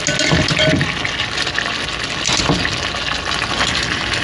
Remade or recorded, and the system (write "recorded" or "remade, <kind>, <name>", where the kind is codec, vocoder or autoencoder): recorded